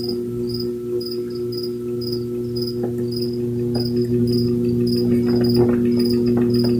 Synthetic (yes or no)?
no